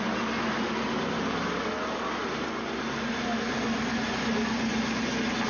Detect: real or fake real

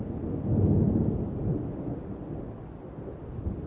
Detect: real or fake real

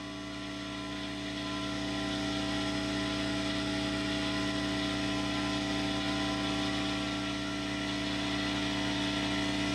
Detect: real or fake real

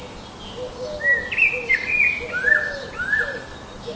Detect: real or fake real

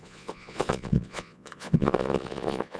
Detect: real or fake fake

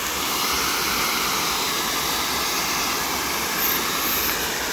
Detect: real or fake real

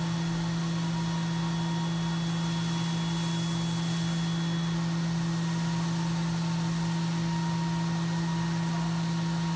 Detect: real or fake real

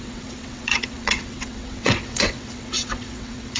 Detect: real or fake fake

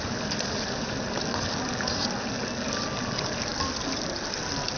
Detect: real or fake real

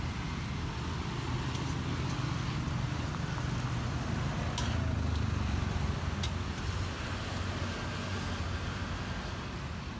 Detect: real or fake real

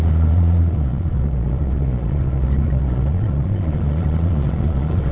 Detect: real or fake fake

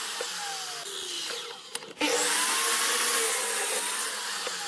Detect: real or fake real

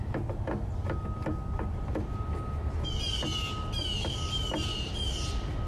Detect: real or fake real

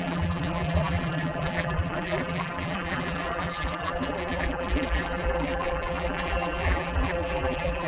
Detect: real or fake fake